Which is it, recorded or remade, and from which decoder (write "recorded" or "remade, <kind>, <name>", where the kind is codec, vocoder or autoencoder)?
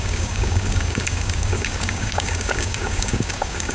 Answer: remade, codec, DAC